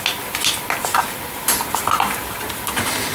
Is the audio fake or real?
real